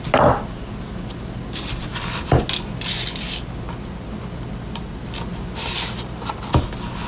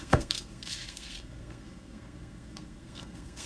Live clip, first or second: first